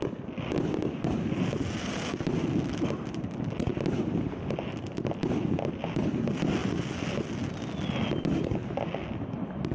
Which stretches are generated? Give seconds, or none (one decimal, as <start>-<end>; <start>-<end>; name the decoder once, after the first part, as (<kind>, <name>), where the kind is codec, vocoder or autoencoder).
none